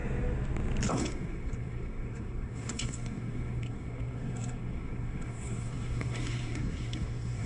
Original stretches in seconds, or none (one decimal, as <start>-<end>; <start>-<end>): 0.0-0.9